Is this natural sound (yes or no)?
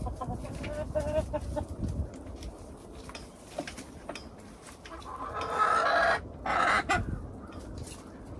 yes